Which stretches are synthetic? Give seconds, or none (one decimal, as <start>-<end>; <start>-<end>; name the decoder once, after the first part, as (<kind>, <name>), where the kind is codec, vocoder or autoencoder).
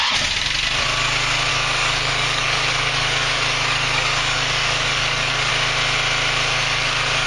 1.5-5.5 (codec, DAC); 6.5-7.3